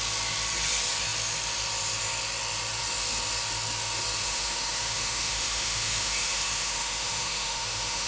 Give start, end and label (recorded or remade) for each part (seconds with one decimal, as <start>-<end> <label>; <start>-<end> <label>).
0.0-4.2 recorded; 4.2-8.1 remade

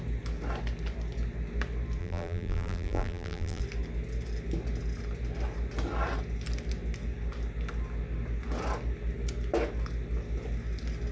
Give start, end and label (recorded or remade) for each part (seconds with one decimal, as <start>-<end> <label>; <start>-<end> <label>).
0.0-2.0 recorded; 2.0-3.6 remade; 3.6-11.1 recorded

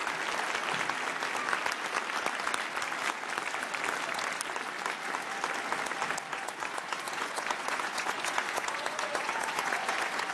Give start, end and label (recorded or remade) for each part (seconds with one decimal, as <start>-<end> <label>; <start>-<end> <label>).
0.0-6.3 recorded; 6.3-10.3 remade